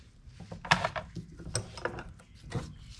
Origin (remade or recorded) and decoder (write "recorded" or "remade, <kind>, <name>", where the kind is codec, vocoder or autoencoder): recorded